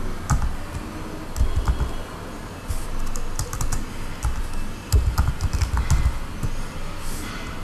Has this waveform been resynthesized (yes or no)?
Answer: no